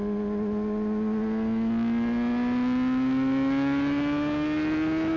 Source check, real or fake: real